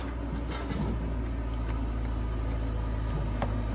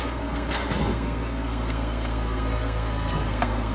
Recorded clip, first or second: first